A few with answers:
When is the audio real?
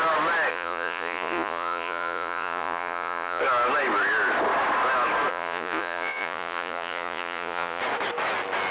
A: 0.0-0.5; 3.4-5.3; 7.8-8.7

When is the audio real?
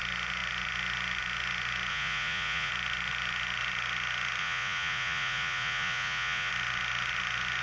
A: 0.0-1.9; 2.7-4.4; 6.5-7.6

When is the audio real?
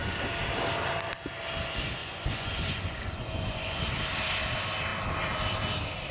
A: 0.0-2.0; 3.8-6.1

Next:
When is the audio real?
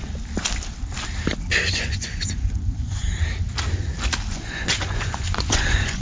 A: 0.0-1.7; 3.0-4.3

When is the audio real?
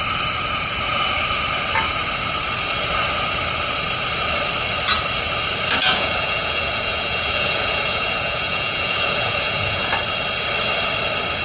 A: 0.0-5.8; 9.9-11.4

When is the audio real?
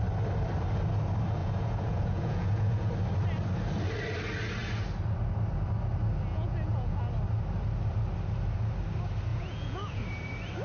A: 0.0-1.4; 2.9-6.3; 7.0-9.3; 10.0-10.6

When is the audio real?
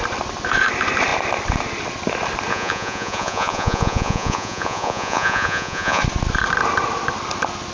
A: 0.0-2.5; 6.0-7.7